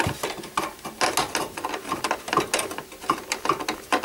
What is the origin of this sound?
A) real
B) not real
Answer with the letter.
A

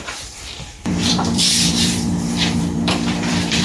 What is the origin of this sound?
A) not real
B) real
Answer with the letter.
A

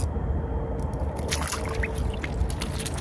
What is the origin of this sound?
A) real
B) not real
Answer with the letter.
A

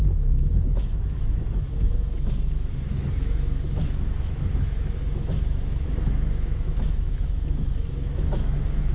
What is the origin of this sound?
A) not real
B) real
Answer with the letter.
A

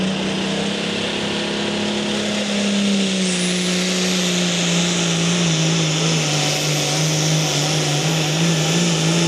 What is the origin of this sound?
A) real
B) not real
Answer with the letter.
A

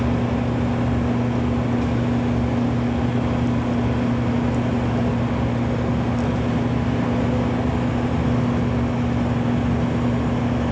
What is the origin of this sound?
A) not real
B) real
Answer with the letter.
B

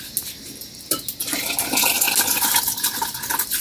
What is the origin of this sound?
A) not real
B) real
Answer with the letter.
B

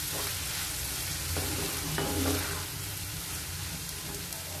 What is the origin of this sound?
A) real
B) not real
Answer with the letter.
A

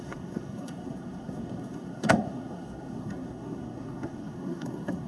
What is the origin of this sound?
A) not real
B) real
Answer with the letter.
A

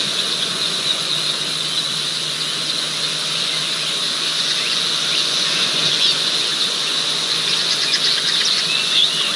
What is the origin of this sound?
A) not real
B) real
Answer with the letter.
A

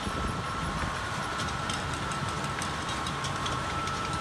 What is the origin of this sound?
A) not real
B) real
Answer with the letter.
A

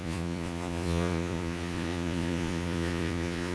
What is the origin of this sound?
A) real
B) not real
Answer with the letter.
B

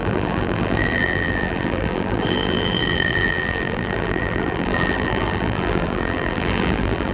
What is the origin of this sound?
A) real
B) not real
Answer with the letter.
B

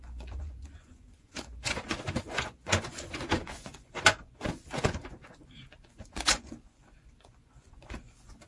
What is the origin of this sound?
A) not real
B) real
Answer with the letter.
A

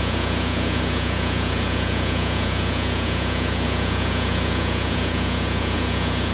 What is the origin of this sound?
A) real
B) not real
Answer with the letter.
B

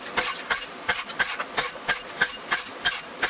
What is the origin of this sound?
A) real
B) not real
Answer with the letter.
A